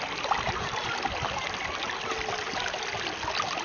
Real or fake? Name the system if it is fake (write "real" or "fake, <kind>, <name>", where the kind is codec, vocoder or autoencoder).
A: real